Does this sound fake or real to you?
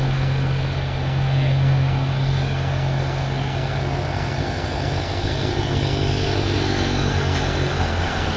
fake